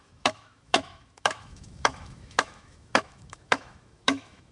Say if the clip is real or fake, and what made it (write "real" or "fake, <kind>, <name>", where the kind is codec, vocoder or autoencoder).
fake, autoencoder, DAC-VAE